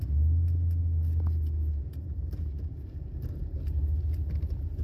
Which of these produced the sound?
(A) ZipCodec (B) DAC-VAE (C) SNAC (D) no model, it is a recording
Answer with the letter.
D